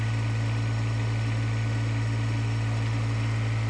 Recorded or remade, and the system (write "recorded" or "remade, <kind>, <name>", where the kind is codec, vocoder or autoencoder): recorded